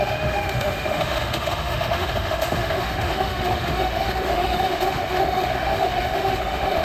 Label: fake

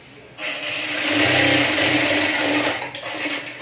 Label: real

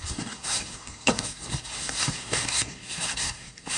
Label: fake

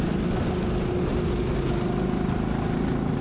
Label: real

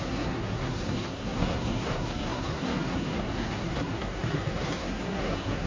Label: fake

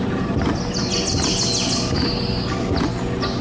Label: real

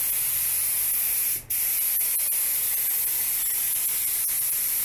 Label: real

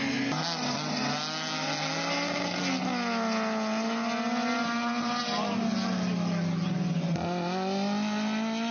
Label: real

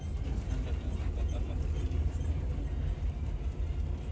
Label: real